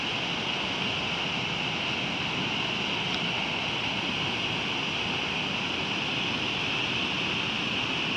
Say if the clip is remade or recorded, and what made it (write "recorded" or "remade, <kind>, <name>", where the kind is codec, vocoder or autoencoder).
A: recorded